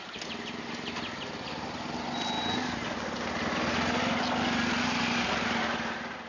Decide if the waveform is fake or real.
real